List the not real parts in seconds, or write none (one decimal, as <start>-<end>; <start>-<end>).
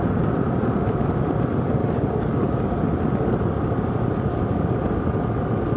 1.8-2.6